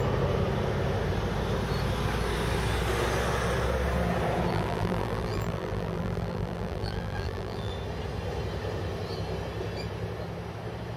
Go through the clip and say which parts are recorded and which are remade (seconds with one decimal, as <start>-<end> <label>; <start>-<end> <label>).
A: 0.0-4.5 recorded; 4.5-7.7 remade; 7.7-11.0 recorded